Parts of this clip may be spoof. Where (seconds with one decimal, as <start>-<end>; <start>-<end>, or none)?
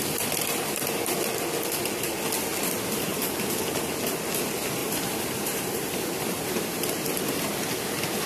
3.1-3.6; 4.8-7.2